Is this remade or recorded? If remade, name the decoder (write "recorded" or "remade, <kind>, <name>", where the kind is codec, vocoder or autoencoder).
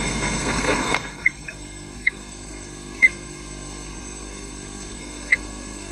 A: remade, codec, SNAC